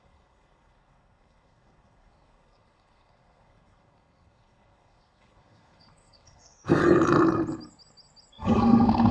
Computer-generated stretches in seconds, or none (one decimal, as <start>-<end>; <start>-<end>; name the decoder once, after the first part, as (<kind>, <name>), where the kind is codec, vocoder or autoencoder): 0.0-6.8 (codec, SNAC); 8.3-9.1